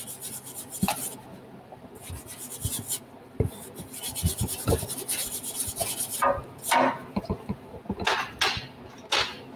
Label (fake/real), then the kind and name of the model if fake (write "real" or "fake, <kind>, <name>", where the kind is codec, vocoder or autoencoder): real